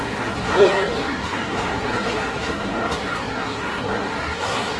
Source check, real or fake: fake